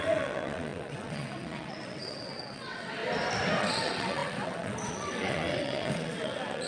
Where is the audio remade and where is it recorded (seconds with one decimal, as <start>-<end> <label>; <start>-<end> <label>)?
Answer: 0.0-3.0 remade; 3.0-3.6 recorded; 3.6-6.7 remade